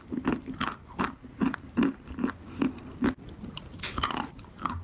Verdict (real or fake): real